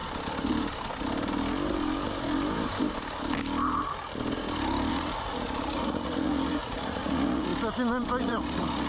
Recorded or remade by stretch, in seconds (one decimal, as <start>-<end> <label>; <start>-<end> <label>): 0.0-4.9 recorded; 4.9-7.5 remade; 7.5-8.2 recorded; 8.2-8.9 remade